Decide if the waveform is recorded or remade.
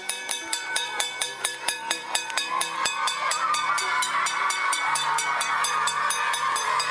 remade